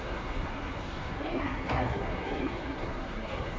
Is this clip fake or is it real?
fake